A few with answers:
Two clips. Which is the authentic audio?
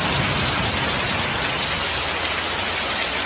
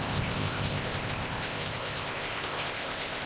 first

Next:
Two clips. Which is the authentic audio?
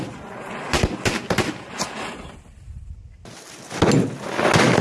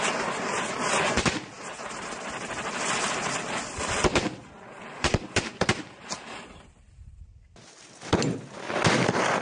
first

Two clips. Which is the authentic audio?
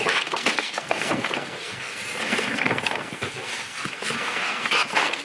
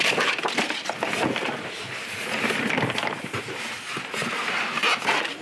second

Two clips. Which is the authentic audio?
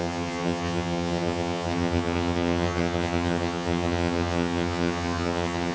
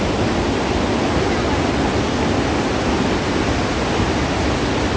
second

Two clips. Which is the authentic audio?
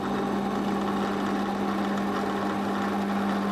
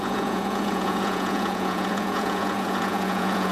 first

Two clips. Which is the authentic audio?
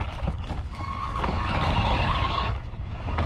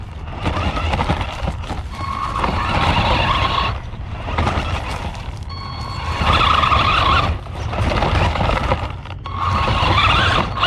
second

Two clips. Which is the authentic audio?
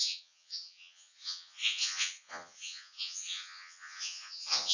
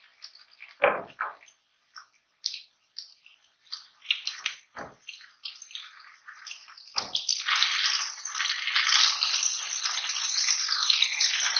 second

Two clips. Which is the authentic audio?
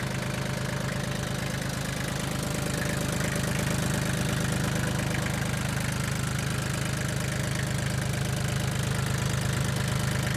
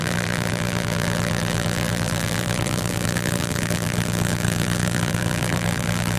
first